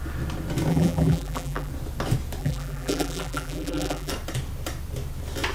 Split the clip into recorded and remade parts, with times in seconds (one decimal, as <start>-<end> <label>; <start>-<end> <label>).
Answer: 0.0-0.7 recorded; 0.7-1.7 remade; 1.7-2.4 recorded; 2.4-4.1 remade; 4.1-5.5 recorded